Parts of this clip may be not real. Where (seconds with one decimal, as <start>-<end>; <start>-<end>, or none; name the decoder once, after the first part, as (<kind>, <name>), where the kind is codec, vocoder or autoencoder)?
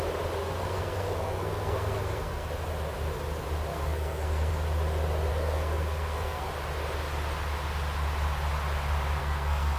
0.4-2.5 (codec, SNAC); 3.7-4.5; 5.3-6.5; 9.2-9.8